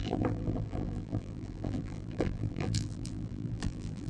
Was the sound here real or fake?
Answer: fake